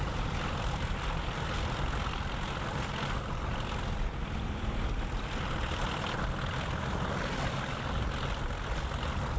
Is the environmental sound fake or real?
real